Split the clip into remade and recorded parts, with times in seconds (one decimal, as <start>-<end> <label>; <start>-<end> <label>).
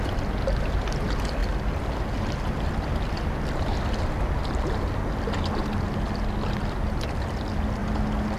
0.0-8.4 recorded